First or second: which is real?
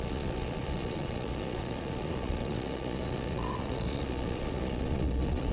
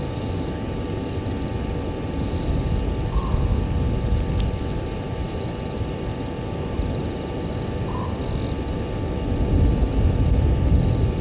second